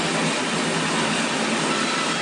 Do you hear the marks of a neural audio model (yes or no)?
no